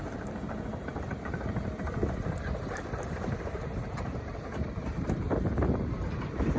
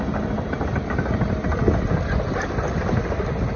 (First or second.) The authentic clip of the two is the second